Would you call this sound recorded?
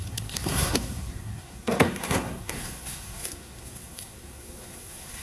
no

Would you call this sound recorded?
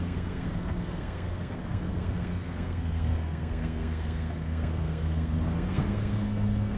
no